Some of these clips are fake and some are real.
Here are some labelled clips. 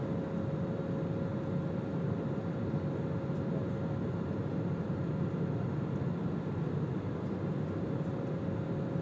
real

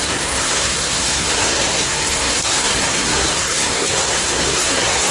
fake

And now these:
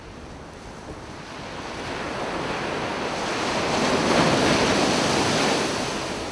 real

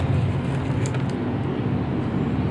real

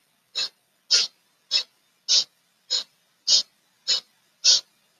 real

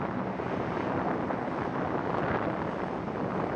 real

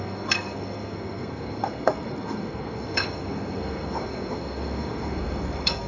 fake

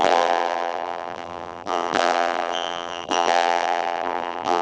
fake